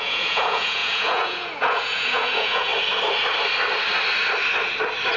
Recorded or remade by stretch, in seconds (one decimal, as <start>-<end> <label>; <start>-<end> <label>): 0.0-2.7 remade; 2.7-5.2 recorded